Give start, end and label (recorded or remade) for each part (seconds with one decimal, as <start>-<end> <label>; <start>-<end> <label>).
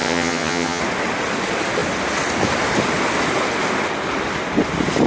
0.0-0.8 remade; 0.8-5.1 recorded